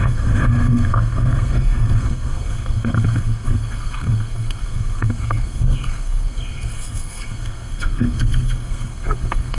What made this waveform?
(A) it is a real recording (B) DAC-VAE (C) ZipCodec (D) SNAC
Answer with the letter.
D